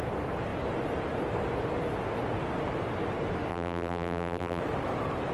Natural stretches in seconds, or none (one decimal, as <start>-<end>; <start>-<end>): 0.0-3.5; 4.6-5.3